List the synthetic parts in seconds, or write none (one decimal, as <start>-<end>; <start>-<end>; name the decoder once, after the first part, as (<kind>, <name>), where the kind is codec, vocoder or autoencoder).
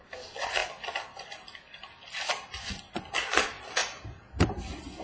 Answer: none